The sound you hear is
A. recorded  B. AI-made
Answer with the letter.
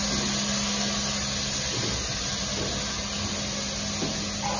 A